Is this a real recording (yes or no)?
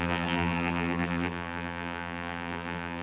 no